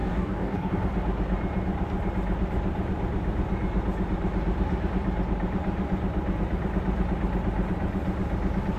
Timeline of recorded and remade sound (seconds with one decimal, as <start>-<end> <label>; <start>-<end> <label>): 0.0-0.7 remade; 0.7-8.8 recorded